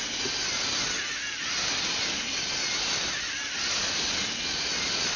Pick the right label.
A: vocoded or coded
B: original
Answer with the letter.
B